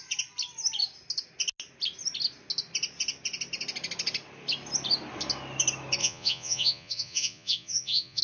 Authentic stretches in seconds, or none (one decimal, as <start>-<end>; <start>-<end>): 0.0-6.0